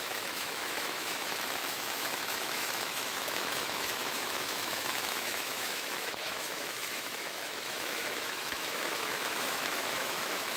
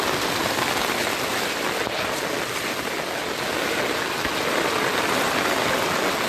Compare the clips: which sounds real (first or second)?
second